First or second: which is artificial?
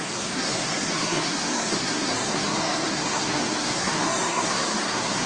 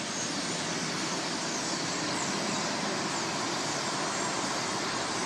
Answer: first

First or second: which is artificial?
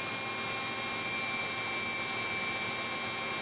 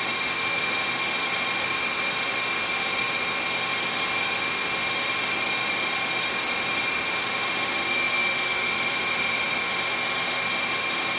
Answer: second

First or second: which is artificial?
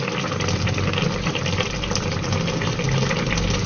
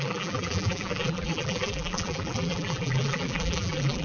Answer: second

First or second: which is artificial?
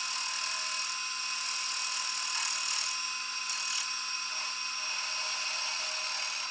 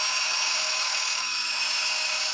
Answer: second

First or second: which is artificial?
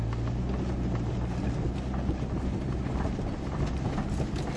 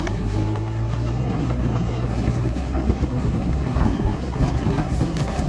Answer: second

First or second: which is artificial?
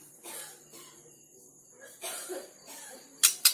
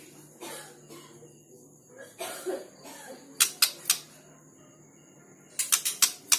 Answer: first